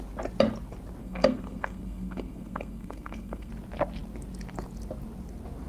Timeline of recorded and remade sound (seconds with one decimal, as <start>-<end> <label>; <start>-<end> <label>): 0.0-1.0 recorded; 1.0-3.5 remade; 3.5-5.7 recorded